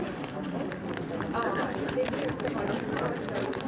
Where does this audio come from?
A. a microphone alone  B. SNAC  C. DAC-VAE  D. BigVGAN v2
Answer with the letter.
D